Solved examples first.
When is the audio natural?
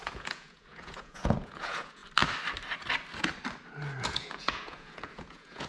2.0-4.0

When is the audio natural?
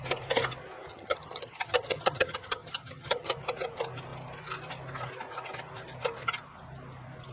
0.0-0.9; 3.3-7.3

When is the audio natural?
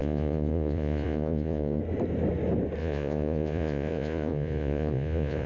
1.8-2.8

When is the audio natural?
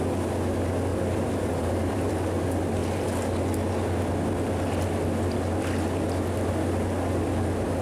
0.0-0.9; 2.1-7.8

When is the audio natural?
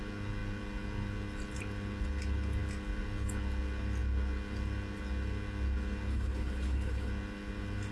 0.0-6.1; 7.1-7.9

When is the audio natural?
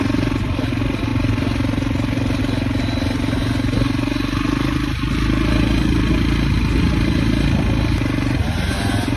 0.0-9.2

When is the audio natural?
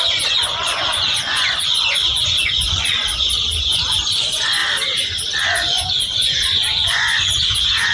4.6-5.4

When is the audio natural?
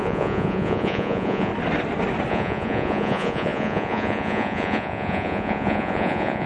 1.5-2.3